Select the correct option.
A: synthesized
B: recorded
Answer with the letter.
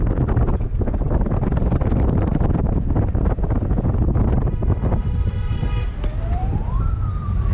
A